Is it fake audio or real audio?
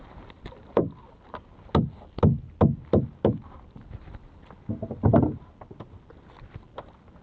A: real